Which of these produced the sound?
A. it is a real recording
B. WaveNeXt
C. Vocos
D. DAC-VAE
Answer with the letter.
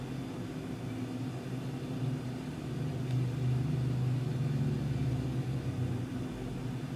A